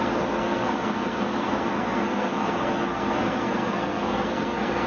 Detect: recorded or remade remade